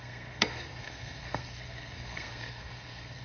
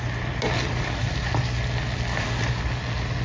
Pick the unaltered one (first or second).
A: second